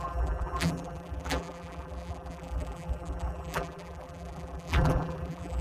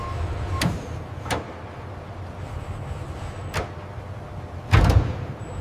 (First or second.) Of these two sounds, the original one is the second